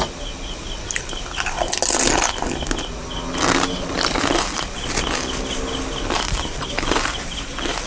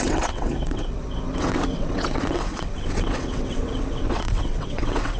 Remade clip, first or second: second